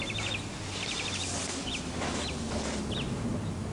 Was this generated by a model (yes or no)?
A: no